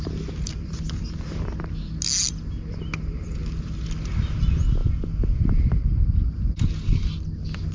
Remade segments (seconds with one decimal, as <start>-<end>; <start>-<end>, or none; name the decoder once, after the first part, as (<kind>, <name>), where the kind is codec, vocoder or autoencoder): none